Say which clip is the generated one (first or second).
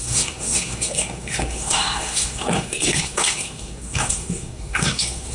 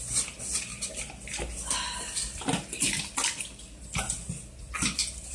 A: first